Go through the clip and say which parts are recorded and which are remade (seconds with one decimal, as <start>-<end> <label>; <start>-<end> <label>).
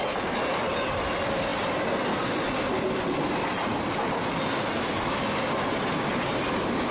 0.0-6.9 recorded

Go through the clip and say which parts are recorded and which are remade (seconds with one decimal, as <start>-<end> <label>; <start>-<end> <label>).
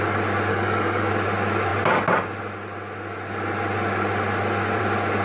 0.0-0.5 recorded; 0.5-1.1 remade; 1.1-5.2 recorded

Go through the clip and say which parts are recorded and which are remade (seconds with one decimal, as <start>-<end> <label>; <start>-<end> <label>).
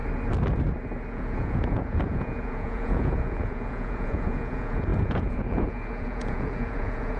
0.0-1.1 recorded; 1.1-7.2 remade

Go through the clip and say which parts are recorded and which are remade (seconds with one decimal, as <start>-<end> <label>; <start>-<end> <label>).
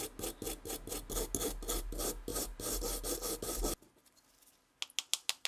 0.0-5.5 recorded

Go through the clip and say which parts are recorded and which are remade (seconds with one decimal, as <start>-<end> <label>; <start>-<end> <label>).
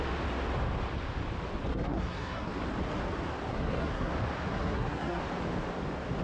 0.0-1.7 recorded; 1.7-2.5 remade; 2.5-3.5 recorded; 3.5-4.1 remade; 4.1-4.5 recorded; 4.5-5.2 remade; 5.2-6.2 recorded